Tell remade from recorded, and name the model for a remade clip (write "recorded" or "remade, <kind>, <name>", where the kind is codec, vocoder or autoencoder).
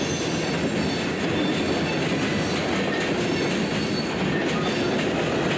recorded